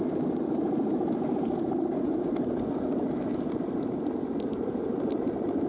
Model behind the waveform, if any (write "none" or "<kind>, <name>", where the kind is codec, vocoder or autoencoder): none